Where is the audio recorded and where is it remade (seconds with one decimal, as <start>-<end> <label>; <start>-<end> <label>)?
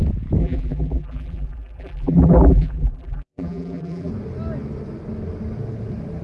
0.0-0.4 recorded; 0.4-4.1 remade; 4.1-6.2 recorded